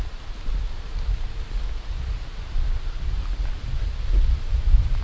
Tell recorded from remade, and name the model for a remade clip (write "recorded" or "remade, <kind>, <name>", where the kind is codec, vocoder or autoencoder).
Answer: recorded